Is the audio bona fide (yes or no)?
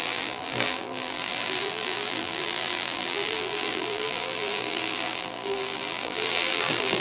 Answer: no